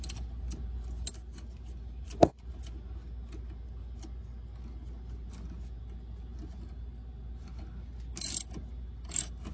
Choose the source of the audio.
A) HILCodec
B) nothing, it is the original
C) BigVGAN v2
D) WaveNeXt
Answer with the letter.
B